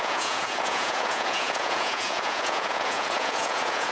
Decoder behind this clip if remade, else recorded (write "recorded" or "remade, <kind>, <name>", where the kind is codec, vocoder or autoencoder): remade, vocoder, Vocos